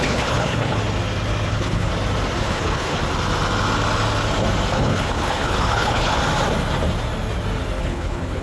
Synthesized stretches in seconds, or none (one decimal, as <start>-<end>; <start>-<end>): 0.0-0.8; 1.5-1.9; 2.4-3.0; 4.7-6.2; 7.8-8.4